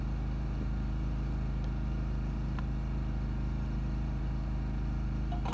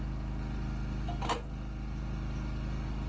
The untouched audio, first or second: second